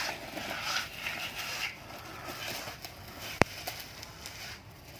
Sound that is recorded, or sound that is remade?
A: recorded